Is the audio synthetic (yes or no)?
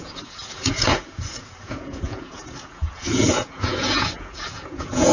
yes